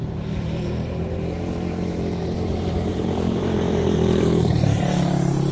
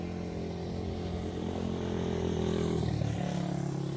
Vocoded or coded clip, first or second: first